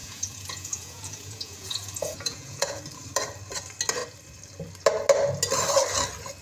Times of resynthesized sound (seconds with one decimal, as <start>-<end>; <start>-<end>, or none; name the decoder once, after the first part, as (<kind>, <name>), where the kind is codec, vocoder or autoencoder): 0.0-2.8 (vocoder, Vocos)